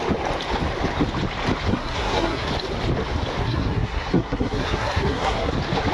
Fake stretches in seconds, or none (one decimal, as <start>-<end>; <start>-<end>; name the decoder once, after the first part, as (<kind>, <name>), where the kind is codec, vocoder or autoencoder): 1.7-2.5 (codec, SNAC); 3.4-5.5